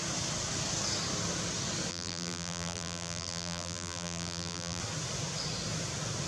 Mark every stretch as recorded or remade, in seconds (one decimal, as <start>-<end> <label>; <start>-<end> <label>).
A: 0.0-1.9 recorded; 1.9-4.8 remade; 4.8-6.3 recorded